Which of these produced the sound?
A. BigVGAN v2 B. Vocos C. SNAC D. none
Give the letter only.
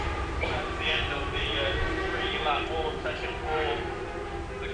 D